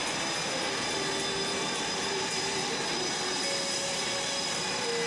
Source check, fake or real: real